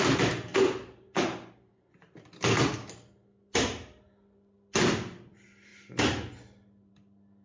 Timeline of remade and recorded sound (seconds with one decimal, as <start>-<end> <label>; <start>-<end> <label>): 0.0-7.4 recorded